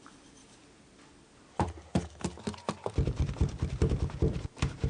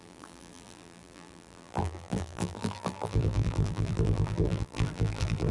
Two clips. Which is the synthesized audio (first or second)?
second